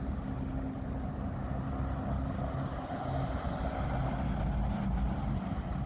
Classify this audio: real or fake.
real